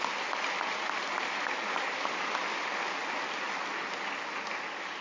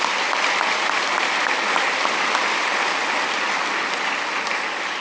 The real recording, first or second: first